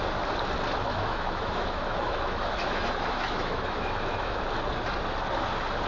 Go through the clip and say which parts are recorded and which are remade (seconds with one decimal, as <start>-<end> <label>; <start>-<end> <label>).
0.0-0.9 recorded; 0.9-4.4 remade; 4.4-5.9 recorded